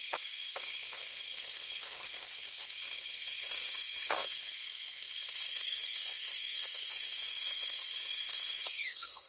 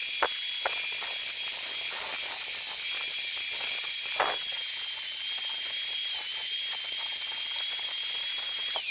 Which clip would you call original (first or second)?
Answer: second